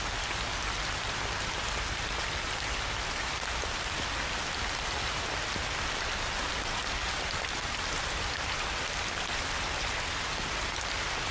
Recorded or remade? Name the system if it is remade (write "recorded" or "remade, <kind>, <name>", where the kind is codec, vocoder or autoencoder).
recorded